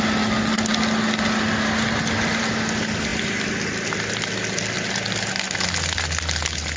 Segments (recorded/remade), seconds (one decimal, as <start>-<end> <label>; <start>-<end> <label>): 0.0-6.8 recorded